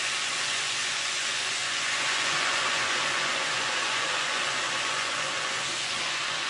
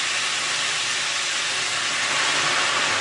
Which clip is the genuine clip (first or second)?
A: second